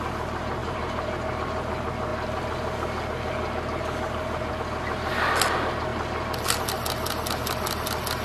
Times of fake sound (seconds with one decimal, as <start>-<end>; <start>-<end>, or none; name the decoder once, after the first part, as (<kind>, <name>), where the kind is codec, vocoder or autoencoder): 0.6-1.3 (vocoder, BigVGAN v2)